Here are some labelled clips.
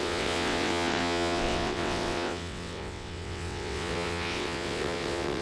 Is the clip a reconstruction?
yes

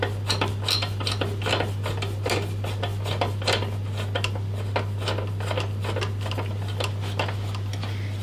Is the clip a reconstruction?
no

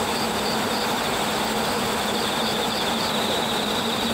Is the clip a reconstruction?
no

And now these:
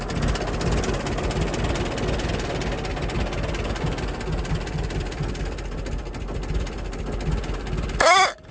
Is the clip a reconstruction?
no